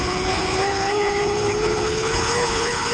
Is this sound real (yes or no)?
no